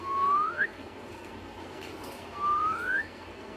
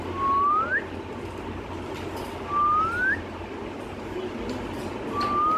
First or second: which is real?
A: second